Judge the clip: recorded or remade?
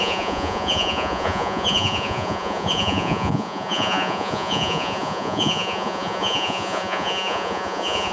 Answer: remade